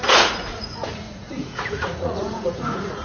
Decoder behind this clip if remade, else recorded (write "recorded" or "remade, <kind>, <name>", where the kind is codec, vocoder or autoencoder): remade, vocoder, Vocos